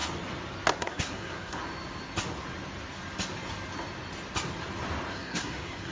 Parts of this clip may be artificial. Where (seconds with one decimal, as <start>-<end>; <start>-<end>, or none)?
0.8-1.6; 5.1-5.9